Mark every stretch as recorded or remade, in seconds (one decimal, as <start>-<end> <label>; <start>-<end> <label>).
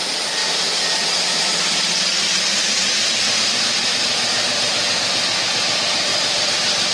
0.0-0.4 remade; 0.4-1.2 recorded; 1.2-6.9 remade